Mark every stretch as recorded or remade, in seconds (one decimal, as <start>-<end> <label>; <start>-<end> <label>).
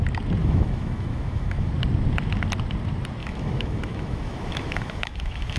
0.0-0.4 recorded; 0.4-1.7 remade; 1.7-3.2 recorded; 3.2-5.6 remade